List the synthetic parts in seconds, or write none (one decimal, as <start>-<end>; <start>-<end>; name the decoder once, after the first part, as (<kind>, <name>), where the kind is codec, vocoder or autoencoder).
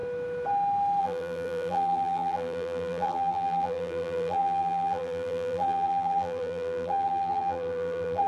1.0-8.3 (vocoder, BigVGAN v2)